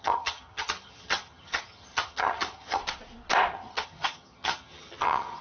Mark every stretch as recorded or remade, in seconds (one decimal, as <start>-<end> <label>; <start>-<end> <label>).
0.0-2.8 remade; 2.8-3.5 recorded; 3.5-5.4 remade